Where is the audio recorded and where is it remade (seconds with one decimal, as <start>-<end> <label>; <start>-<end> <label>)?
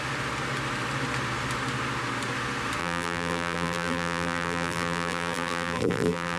0.0-2.8 recorded; 2.8-6.4 remade